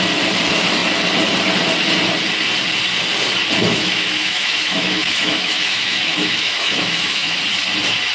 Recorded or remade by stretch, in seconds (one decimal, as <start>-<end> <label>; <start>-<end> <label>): 0.0-3.7 recorded; 3.7-7.4 remade; 7.4-8.1 recorded